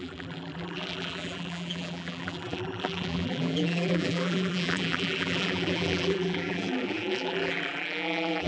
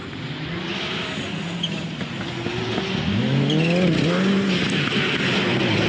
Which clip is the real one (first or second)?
second